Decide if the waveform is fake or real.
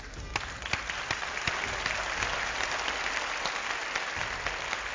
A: real